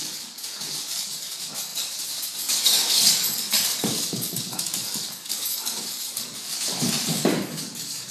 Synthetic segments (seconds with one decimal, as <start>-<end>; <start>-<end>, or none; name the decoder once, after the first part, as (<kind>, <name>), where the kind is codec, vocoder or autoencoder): 0.0-8.1 (codec, DAC)